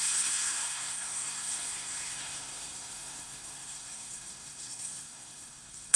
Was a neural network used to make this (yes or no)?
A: yes